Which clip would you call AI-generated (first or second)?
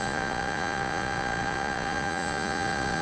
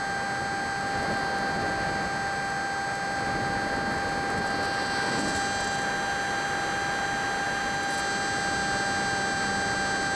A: first